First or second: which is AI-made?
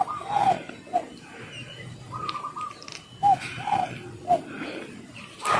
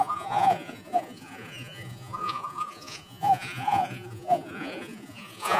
second